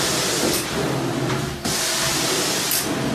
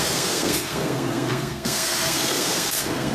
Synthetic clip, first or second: second